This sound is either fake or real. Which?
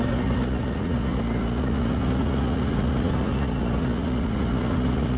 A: fake